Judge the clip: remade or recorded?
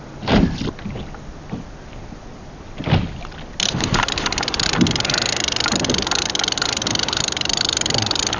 recorded